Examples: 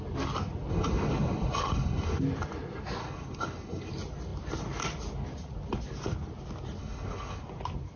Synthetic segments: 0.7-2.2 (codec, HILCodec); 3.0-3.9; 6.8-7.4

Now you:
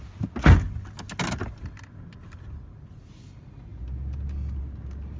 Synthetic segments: none